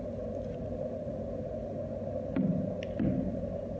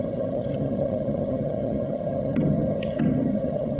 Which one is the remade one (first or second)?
second